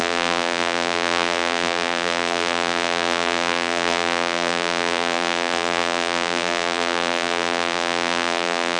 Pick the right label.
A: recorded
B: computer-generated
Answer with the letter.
B